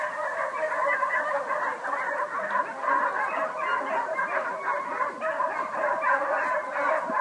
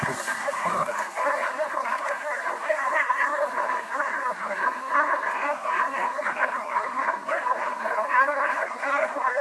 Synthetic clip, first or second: second